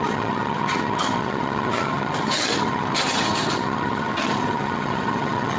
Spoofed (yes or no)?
yes